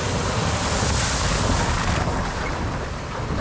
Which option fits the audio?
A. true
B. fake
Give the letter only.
A